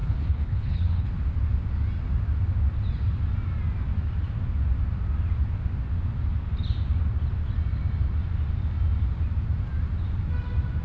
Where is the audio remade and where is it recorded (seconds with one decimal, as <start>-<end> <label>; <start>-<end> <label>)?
0.0-1.1 remade; 1.1-10.8 recorded